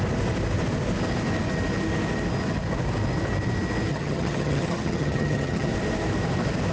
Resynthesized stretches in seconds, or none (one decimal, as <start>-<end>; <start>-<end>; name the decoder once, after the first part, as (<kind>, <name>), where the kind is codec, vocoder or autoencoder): 3.9-5.7 (vocoder, HiFi-GAN)